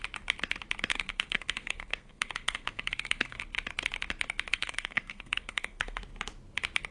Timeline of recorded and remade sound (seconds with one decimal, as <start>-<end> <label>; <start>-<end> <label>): 0.0-0.9 recorded; 0.9-3.4 remade; 3.4-4.5 recorded; 4.5-6.0 remade; 6.0-6.9 recorded